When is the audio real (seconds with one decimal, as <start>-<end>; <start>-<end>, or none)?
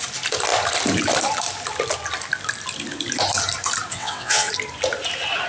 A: 0.0-3.9; 4.5-5.5